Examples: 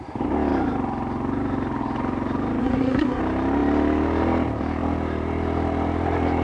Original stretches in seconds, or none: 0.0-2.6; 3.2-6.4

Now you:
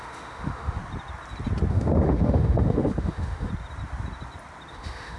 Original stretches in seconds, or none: 0.8-1.7; 3.5-4.7

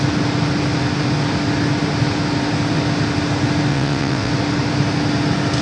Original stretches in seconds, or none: 0.0-3.7; 4.3-5.6

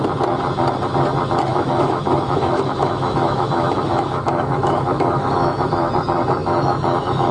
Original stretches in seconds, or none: 0.0-1.5; 5.9-6.4

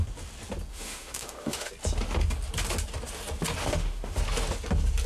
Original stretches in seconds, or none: 0.0-0.7; 1.7-3.6; 4.2-5.1

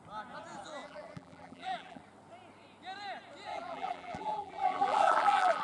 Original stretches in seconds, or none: 0.0-0.8; 2.0-3.5